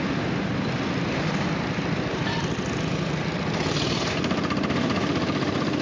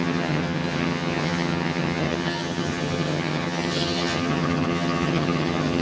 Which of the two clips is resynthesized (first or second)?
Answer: second